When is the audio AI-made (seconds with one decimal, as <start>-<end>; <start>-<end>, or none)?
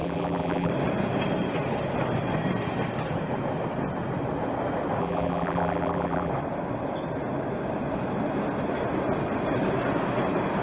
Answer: 0.0-0.7; 5.0-6.3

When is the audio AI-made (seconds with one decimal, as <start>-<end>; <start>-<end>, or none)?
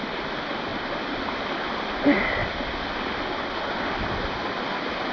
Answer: 0.7-1.7; 2.4-3.5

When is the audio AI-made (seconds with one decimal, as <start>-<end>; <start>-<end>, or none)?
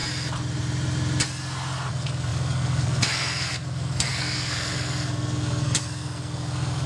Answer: 1.9-6.9